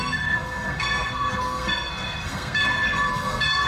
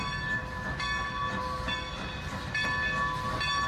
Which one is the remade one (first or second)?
first